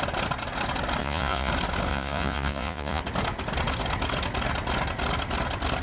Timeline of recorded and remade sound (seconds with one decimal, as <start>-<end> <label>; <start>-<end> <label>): 0.0-1.0 recorded; 1.0-1.5 remade; 1.5-1.9 recorded; 1.9-3.0 remade; 3.0-5.8 recorded